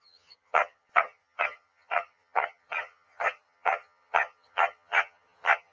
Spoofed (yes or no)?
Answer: yes